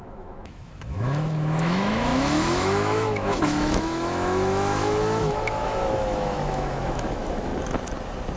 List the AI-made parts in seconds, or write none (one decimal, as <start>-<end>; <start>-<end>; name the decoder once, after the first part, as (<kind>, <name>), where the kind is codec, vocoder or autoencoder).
0.0-7.5 (autoencoder, DAC-VAE)